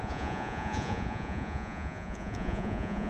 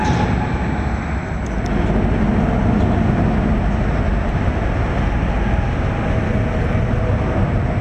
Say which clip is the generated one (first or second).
first